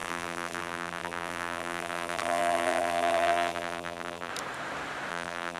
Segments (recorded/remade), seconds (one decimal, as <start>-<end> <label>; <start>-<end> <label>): 0.0-4.3 remade; 4.3-5.1 recorded; 5.1-5.6 remade